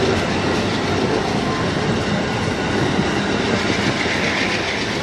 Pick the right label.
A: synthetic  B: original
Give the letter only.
B